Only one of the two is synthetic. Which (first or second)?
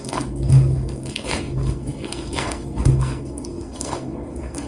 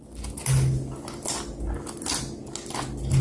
first